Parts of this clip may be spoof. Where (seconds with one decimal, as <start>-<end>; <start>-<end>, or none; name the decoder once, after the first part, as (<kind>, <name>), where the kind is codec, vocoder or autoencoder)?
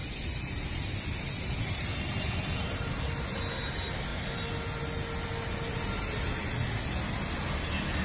none